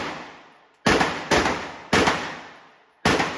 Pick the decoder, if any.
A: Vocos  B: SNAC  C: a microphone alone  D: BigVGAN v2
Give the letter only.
C